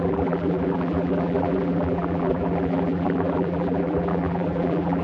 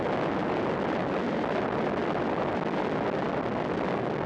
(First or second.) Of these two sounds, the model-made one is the first